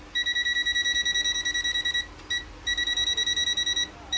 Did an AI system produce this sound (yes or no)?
no